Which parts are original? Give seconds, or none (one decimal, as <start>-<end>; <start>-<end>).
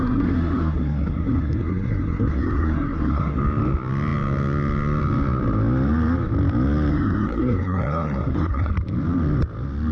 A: 3.4-6.9; 8.7-9.9